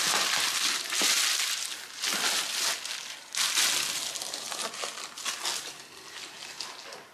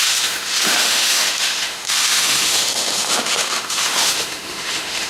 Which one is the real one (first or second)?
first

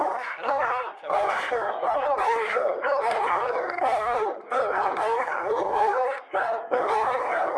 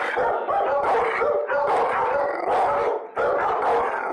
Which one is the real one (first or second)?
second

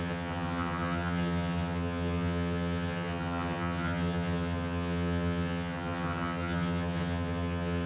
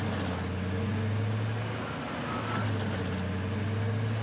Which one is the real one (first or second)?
second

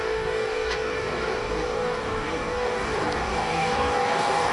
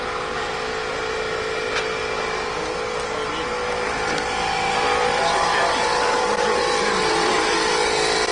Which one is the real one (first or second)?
second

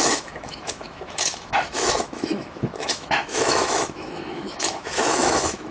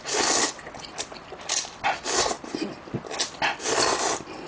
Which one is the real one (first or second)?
second